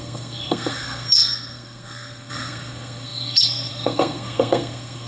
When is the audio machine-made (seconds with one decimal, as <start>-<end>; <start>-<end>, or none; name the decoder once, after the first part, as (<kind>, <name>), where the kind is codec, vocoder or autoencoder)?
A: 0.0-5.1 (codec, SNAC)